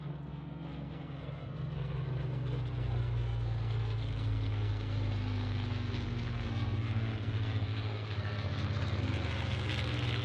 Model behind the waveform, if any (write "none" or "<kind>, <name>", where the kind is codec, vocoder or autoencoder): codec, SNAC